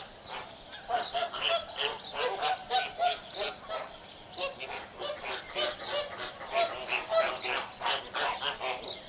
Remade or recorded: remade